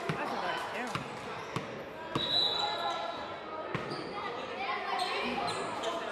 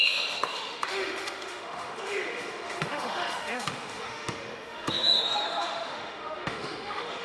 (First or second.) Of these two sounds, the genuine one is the first